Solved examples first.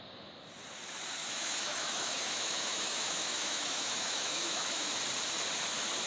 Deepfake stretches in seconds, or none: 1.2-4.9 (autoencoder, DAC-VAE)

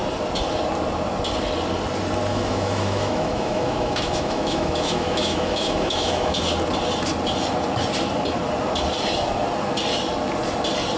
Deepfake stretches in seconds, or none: 2.3-6.4 (autoencoder, DAC-VAE)